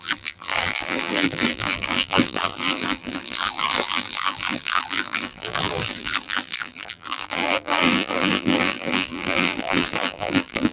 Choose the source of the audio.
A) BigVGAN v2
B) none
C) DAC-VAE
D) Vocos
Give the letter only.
A